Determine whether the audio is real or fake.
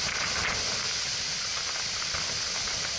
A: real